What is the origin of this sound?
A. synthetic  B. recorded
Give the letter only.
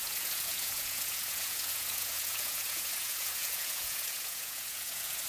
A